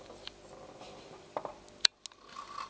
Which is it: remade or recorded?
recorded